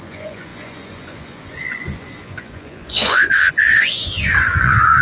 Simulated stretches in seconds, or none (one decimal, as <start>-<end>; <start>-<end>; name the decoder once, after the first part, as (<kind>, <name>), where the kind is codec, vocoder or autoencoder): 0.0-5.0 (vocoder, Vocos)